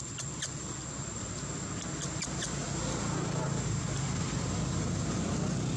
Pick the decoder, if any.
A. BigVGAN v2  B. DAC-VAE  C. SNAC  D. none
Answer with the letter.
D